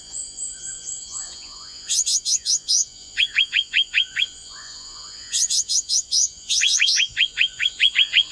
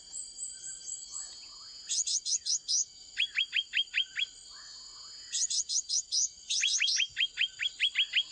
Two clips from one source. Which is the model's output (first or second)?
first